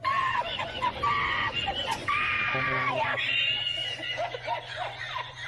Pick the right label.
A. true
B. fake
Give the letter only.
B